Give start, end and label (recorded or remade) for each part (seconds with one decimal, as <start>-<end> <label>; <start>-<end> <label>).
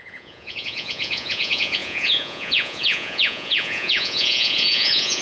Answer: 0.0-5.2 remade